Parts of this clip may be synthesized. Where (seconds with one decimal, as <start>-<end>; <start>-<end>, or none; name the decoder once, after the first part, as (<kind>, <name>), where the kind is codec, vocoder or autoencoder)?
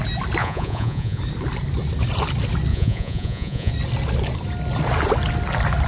0.4-1.2 (vocoder, Vocos); 2.7-3.7